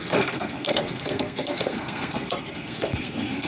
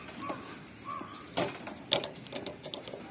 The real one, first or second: second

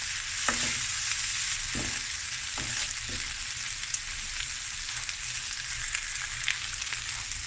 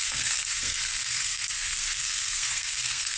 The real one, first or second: first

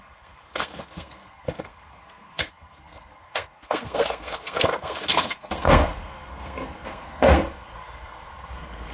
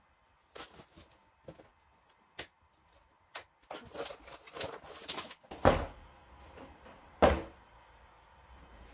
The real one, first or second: second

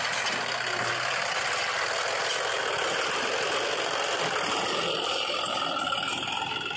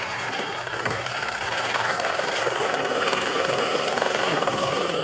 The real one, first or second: first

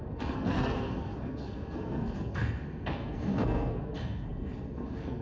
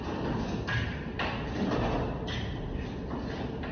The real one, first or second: second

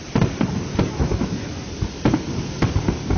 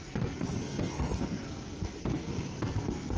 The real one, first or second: first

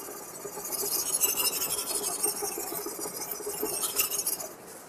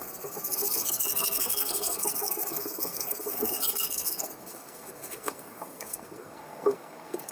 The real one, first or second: first